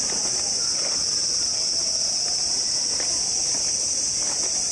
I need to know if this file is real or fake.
real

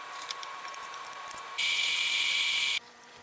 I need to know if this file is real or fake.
fake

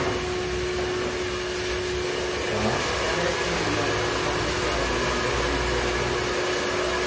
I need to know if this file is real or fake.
real